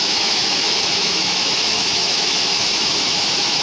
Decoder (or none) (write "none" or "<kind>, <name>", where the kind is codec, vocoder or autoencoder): autoencoder, DAC-VAE